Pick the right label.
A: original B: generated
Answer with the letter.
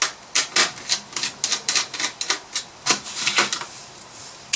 A